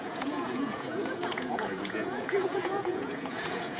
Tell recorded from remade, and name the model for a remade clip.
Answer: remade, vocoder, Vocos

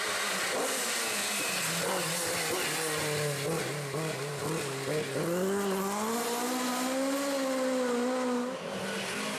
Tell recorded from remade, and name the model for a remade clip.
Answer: recorded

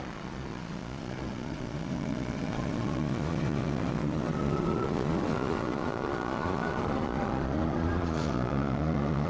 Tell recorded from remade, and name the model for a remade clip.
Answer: remade, vocoder, Vocos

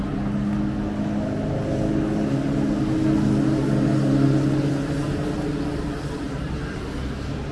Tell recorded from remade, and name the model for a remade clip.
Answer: recorded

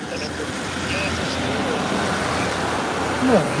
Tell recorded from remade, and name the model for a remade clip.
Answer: recorded